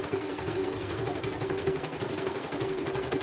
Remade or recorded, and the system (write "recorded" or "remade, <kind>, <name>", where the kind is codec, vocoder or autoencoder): remade, codec, SNAC